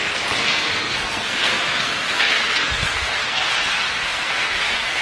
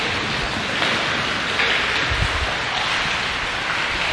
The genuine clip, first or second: second